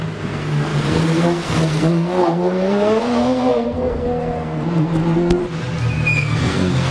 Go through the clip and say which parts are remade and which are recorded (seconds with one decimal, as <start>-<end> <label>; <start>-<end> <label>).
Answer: 0.0-5.4 remade; 5.4-6.2 recorded; 6.2-6.9 remade